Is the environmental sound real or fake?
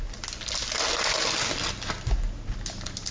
real